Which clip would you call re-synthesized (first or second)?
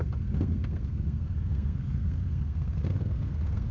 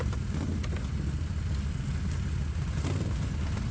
first